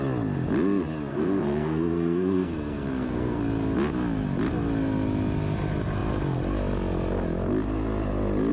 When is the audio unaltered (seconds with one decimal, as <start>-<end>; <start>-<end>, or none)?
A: 0.0-1.1; 3.4-8.5